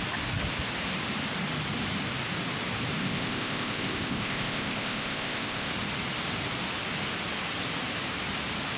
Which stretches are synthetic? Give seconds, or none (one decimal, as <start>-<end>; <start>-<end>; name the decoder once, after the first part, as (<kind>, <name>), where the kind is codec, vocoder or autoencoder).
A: 3.0-5.7 (codec, ZipCodec)